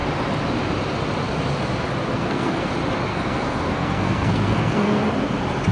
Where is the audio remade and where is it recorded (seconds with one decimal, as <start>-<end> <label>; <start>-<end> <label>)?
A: 0.0-2.1 recorded; 2.1-2.7 remade; 2.7-3.1 recorded; 3.1-5.1 remade; 5.1-5.7 recorded